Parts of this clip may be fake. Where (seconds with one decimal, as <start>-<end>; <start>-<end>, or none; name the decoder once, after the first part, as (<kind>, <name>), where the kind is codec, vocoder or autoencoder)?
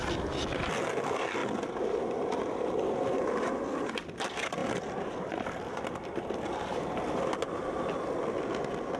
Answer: 1.4-3.6 (vocoder, BigVGAN v2); 4.6-7.3